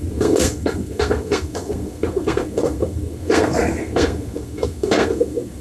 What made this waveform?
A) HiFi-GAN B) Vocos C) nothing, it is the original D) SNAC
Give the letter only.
D